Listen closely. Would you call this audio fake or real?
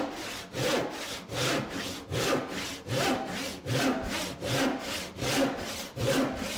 real